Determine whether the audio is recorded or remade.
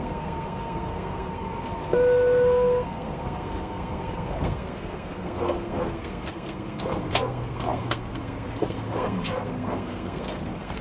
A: remade